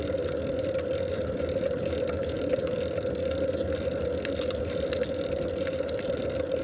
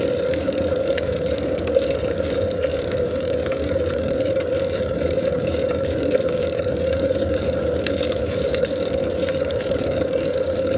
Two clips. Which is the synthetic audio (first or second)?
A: second